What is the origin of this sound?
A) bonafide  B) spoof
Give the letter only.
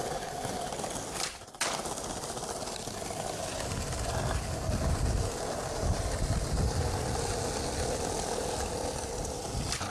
A